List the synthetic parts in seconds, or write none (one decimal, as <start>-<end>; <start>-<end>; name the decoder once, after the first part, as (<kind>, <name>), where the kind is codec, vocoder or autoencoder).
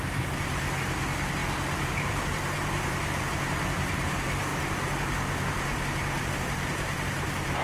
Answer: 0.0-4.5 (vocoder, BigVGAN v2); 6.2-7.6